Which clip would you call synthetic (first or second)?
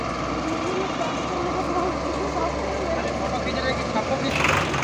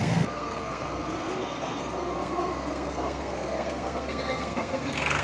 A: second